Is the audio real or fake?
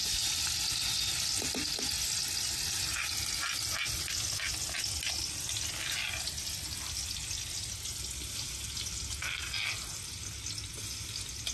real